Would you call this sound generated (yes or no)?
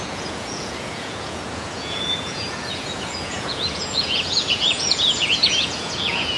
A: yes